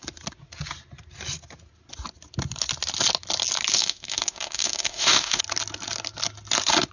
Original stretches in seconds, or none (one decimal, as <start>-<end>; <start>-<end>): 0.0-3.7; 5.4-6.9